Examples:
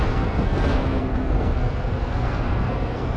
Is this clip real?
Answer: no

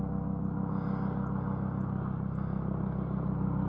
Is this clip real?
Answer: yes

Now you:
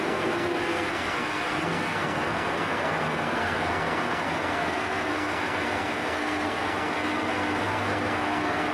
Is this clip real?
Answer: no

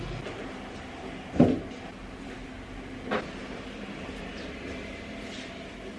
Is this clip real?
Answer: yes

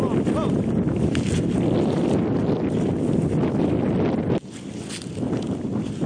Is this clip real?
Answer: yes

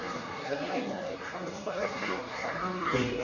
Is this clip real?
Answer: no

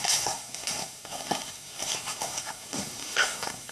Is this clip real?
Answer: no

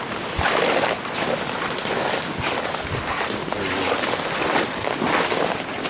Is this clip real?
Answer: yes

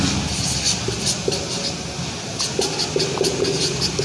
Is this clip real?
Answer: yes